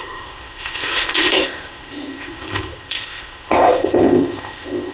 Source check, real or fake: fake